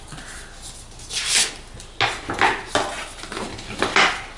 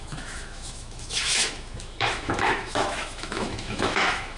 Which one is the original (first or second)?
first